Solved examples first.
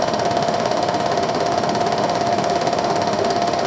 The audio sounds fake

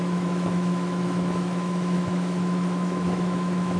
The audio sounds fake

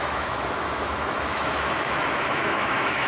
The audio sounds fake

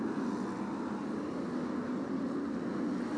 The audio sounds real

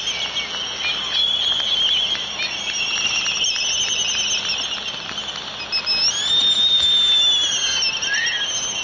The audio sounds real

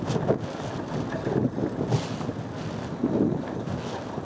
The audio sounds real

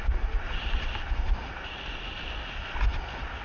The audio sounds real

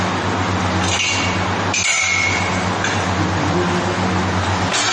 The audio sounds real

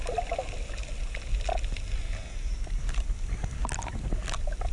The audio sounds real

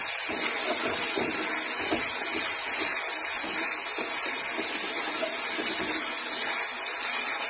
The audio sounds real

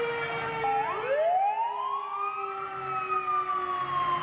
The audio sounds real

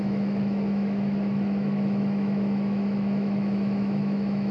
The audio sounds fake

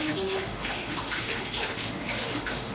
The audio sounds fake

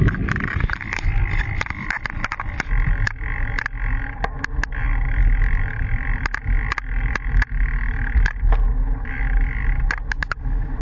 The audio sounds real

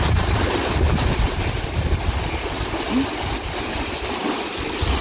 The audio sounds real